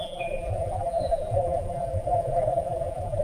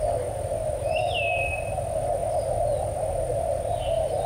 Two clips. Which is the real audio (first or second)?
second